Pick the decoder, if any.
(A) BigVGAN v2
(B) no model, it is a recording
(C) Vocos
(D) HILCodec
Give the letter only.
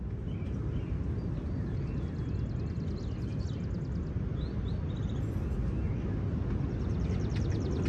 B